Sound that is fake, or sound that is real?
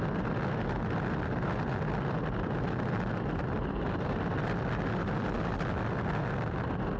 real